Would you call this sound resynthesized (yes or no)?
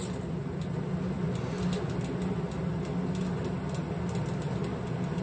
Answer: no